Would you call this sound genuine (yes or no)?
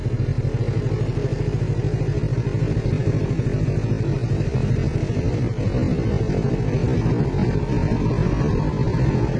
yes